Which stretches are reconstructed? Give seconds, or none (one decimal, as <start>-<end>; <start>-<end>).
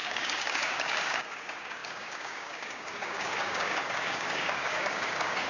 0.0-5.5